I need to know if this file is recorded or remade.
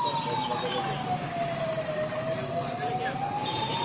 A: recorded